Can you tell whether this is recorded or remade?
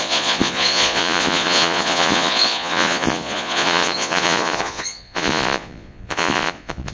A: remade